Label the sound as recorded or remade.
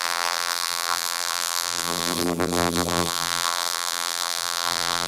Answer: remade